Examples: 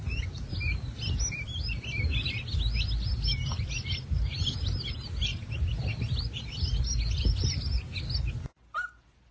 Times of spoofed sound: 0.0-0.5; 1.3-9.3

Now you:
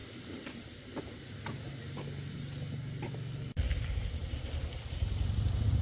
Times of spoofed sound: 0.0-1.0; 4.2-5.8

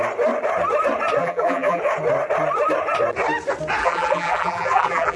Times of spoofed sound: 1.2-1.8; 3.8-5.2